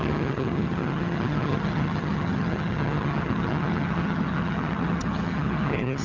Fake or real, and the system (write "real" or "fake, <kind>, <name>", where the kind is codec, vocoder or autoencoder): fake, vocoder, HiFi-GAN